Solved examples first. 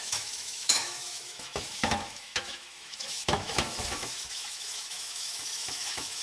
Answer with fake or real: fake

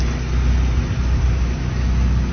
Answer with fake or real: real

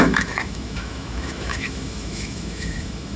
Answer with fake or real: fake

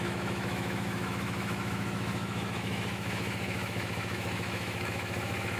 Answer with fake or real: fake